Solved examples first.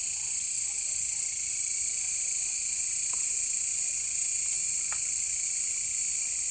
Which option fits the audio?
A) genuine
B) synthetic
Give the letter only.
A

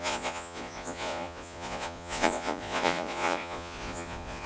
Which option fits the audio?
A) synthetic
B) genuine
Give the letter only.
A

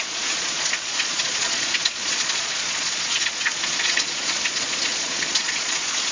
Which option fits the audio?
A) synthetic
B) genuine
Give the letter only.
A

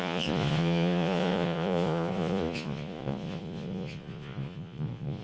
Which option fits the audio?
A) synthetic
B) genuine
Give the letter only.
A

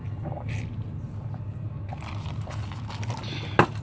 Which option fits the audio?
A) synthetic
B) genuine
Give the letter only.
B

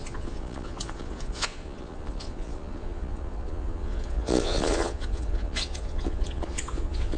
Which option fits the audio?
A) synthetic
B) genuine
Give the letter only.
A